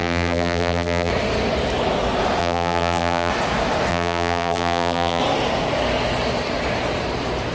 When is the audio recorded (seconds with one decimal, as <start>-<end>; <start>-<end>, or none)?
1.1-2.4; 3.3-3.9; 5.2-7.5